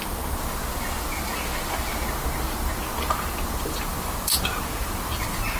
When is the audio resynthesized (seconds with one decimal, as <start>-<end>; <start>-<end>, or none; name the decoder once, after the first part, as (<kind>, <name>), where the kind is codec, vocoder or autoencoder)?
none